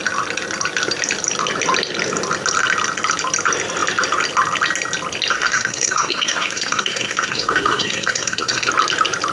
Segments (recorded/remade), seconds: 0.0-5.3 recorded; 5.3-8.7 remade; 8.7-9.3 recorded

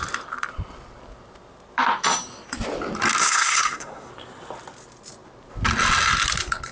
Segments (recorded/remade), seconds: 0.0-3.2 recorded; 3.2-4.1 remade; 4.1-6.7 recorded

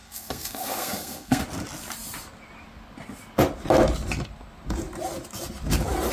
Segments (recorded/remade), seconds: 0.0-1.4 remade; 1.4-6.1 recorded

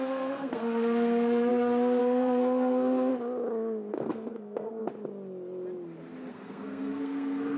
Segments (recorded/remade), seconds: 0.0-3.1 remade; 3.1-3.9 recorded; 3.9-4.8 remade; 4.8-6.3 recorded; 6.3-7.6 remade

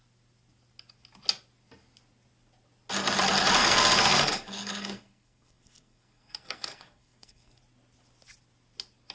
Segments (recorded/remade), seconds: 0.0-3.6 recorded; 3.6-7.6 remade; 7.6-9.1 recorded